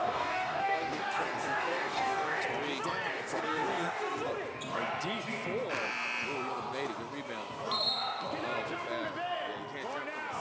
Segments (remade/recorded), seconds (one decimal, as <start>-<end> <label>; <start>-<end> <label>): 0.0-2.4 remade; 2.4-3.1 recorded; 3.1-3.9 remade; 3.9-10.4 recorded

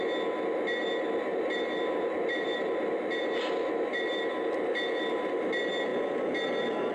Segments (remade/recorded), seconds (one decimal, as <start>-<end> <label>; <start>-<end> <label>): 0.0-1.3 recorded; 1.3-5.3 remade; 5.3-5.9 recorded; 5.9-6.9 remade

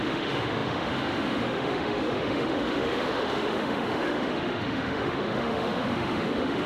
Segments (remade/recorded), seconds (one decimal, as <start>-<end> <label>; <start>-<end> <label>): 0.0-6.7 remade

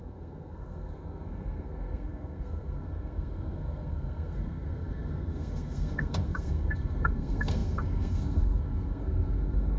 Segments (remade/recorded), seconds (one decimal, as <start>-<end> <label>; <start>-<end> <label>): 0.0-9.8 remade